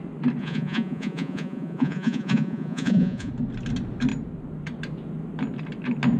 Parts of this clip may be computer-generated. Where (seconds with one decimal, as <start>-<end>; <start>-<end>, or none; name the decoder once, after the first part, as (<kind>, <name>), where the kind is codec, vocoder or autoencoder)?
0.4-3.3 (vocoder, Vocos)

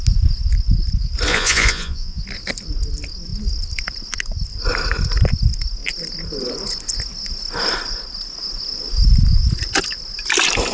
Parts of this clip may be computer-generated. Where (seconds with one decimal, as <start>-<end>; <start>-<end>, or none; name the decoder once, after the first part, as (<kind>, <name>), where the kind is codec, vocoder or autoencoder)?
1.3-2.2 (vocoder, Vocos)

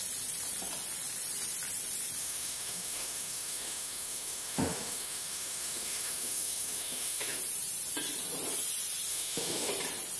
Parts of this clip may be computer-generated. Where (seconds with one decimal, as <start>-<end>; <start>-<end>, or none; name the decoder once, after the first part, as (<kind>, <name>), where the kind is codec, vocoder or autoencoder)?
2.2-7.4 (autoencoder, DAC-VAE); 9.1-9.7

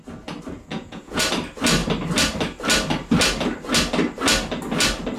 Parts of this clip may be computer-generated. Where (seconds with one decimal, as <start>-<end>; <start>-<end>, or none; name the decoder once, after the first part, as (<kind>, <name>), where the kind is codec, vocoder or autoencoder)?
0.7-1.2 (vocoder, Vocos)